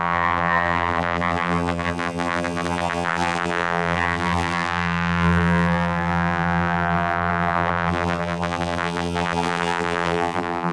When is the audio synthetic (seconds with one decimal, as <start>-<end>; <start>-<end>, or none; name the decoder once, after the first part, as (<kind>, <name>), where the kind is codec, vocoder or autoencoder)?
0.0-10.7 (vocoder, BigVGAN v2)